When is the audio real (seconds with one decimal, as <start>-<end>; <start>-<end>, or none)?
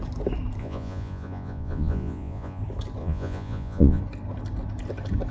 0.0-0.6; 2.6-3.0; 4.0-5.3